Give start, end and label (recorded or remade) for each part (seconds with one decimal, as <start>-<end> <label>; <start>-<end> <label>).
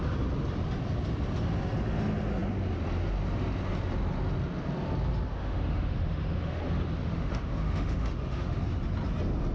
0.0-5.3 recorded; 5.3-6.6 remade; 6.6-7.0 recorded; 7.0-8.6 remade; 8.6-9.5 recorded